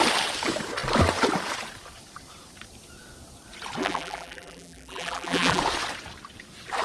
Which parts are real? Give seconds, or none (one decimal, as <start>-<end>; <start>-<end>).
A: 0.0-3.8; 5.6-6.8